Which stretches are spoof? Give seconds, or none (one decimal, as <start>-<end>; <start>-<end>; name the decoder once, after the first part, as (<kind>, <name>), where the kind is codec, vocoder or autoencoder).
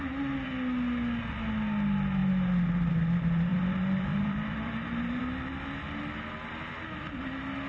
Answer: 3.5-5.2 (vocoder, BigVGAN v2)